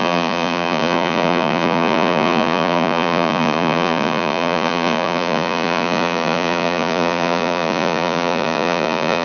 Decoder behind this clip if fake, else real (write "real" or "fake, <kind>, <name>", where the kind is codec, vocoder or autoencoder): fake, vocoder, Vocos